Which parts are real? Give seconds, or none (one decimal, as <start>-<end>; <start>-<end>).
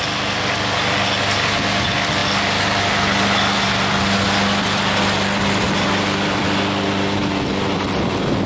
0.0-8.5